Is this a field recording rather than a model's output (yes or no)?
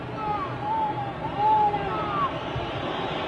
yes